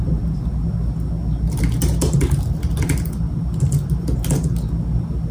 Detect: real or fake real